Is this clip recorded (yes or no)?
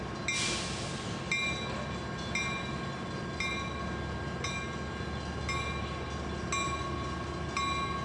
yes